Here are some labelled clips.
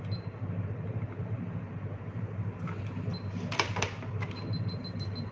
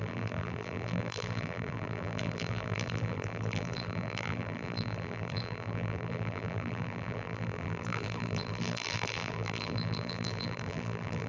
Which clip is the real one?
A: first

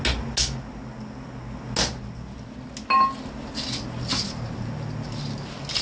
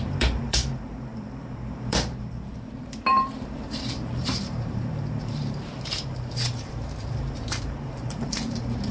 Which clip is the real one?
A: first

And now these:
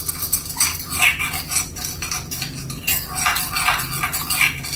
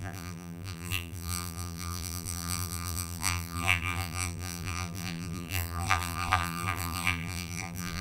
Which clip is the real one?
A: first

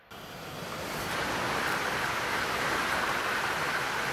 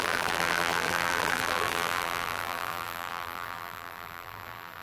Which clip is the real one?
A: first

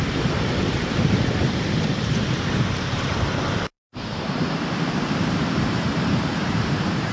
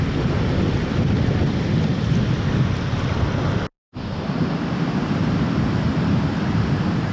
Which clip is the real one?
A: second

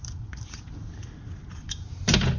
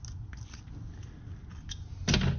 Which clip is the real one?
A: second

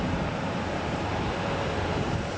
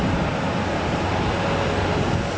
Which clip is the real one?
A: second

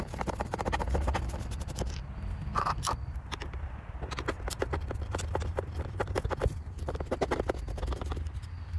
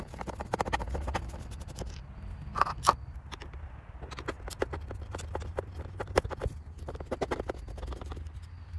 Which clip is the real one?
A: second